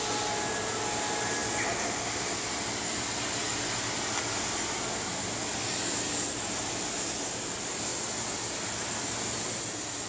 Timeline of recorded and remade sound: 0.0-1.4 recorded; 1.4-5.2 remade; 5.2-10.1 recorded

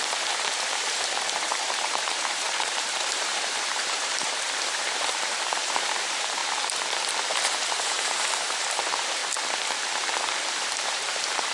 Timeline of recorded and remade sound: 0.0-6.4 remade; 6.4-7.5 recorded; 7.5-9.2 remade; 9.2-10.5 recorded; 10.5-11.5 remade

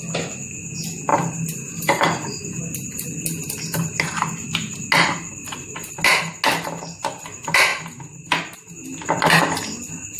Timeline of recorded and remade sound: 0.0-1.1 recorded; 1.1-2.6 remade; 2.6-10.2 recorded

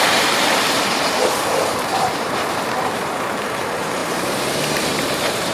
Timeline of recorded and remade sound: 0.0-5.5 remade

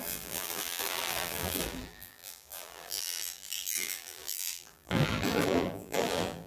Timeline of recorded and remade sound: 0.0-6.5 remade

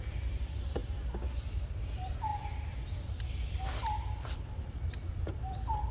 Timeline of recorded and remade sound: 0.0-0.8 remade; 0.8-1.6 recorded; 1.6-5.9 remade

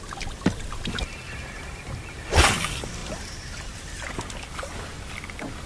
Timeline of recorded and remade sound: 0.0-3.0 recorded; 3.0-4.1 remade; 4.1-5.7 recorded

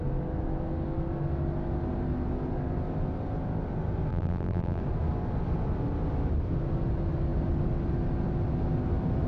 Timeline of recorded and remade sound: 0.0-4.1 recorded; 4.1-4.8 remade; 4.8-9.3 recorded